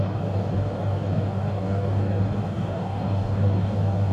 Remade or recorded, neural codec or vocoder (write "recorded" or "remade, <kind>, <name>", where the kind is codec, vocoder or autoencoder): remade, codec, DAC